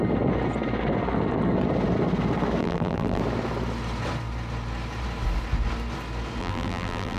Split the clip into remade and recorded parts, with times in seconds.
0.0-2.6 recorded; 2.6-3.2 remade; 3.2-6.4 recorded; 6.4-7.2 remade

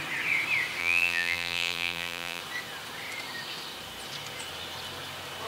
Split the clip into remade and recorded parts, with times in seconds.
0.0-0.8 recorded; 0.8-2.4 remade; 2.4-5.5 recorded

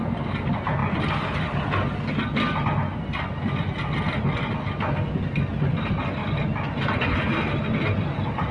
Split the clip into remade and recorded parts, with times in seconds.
0.0-0.8 recorded; 0.8-1.4 remade; 1.4-6.2 recorded; 6.2-7.5 remade; 7.5-8.5 recorded

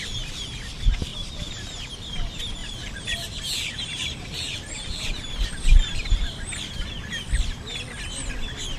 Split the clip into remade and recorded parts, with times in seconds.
0.0-1.1 recorded; 1.1-1.9 remade; 1.9-2.6 recorded; 2.6-6.2 remade; 6.2-8.8 recorded

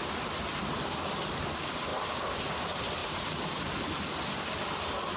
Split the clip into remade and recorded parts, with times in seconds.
0.0-3.0 recorded; 3.0-3.8 remade; 3.8-5.2 recorded

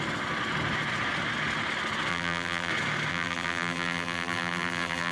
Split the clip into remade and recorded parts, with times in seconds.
0.0-2.1 recorded; 2.1-2.7 remade; 2.7-3.1 recorded; 3.1-5.1 remade